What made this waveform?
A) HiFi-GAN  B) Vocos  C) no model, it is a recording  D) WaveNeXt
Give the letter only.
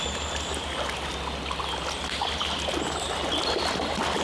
C